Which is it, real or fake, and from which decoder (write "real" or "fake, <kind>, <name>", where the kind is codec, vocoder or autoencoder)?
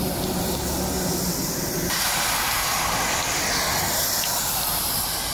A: real